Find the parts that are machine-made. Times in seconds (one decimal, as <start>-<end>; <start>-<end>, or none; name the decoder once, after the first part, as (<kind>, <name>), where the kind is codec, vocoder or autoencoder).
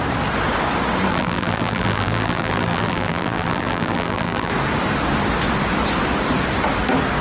1.1-4.5 (vocoder, BigVGAN v2)